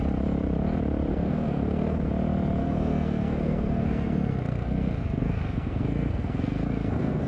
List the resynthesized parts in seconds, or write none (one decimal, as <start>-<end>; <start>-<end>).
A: 1.1-2.1; 2.6-7.3